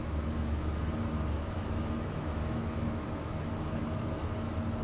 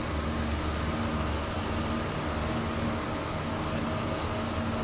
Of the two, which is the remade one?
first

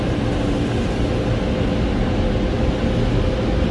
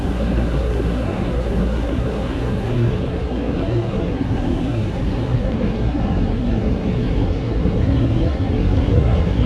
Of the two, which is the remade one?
second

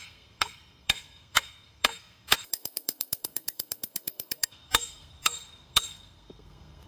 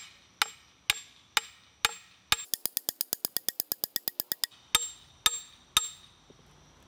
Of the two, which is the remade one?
first